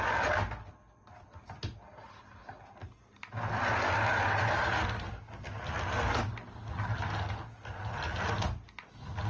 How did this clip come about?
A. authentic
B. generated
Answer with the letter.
A